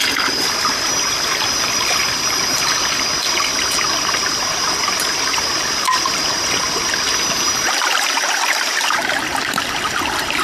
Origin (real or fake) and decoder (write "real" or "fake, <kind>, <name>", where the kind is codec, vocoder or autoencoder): real